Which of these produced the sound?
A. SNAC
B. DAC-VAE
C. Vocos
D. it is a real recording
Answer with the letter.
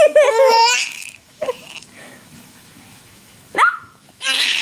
B